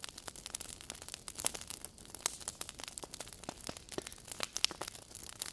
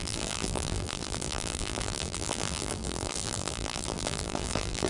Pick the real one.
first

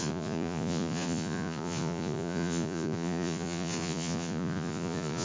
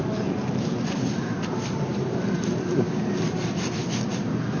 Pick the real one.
second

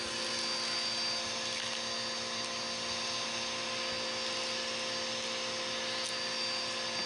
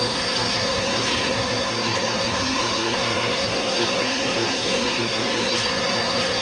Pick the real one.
first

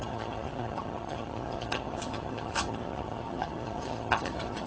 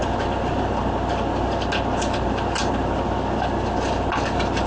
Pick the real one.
second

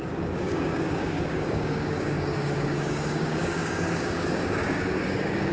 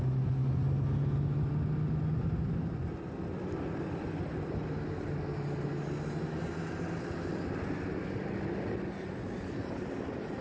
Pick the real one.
second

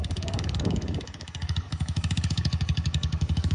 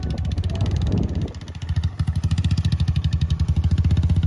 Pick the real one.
second